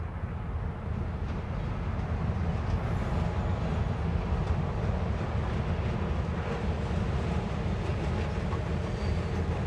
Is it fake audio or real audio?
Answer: real